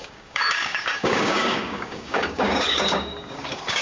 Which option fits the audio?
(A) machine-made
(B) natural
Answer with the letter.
A